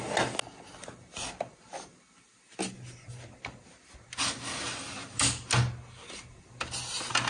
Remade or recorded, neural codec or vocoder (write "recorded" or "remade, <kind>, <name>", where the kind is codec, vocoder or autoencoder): recorded